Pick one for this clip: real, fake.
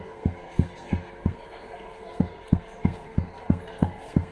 fake